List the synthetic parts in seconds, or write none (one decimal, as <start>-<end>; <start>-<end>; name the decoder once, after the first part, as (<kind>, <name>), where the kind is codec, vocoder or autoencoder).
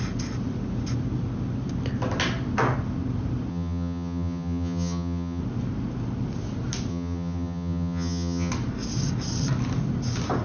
3.5-5.4 (vocoder, HiFi-GAN); 6.9-8.5